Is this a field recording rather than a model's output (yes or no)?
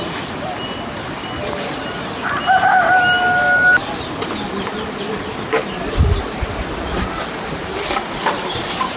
yes